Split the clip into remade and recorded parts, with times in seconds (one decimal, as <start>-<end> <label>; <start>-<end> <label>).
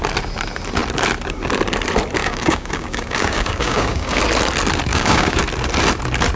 0.0-2.2 recorded; 2.2-4.2 remade; 4.2-4.9 recorded; 4.9-5.4 remade; 5.4-6.4 recorded